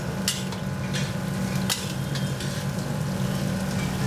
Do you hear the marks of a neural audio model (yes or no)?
no